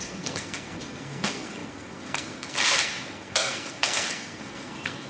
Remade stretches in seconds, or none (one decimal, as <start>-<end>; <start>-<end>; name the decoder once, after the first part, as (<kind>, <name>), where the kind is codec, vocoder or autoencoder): 0.0-5.1 (codec, SNAC)